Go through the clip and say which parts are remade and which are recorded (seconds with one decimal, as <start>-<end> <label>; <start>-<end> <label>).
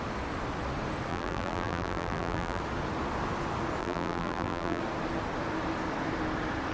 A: 0.0-1.1 recorded; 1.1-2.6 remade; 2.6-3.8 recorded; 3.8-4.8 remade; 4.8-6.7 recorded